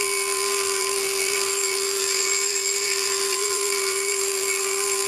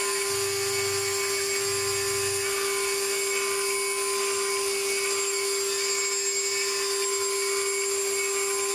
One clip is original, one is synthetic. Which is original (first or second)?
second